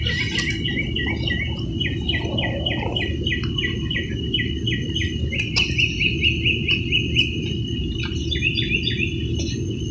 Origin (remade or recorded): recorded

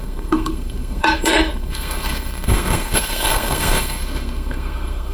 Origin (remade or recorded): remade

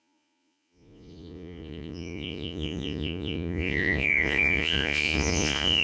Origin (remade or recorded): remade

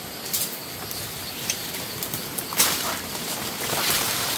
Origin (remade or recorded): recorded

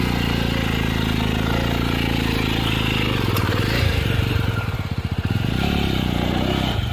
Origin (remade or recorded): recorded